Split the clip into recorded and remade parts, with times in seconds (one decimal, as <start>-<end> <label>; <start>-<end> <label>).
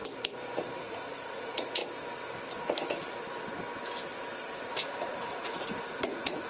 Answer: 0.0-0.8 recorded; 0.8-1.8 remade; 1.8-4.6 recorded; 4.6-6.5 remade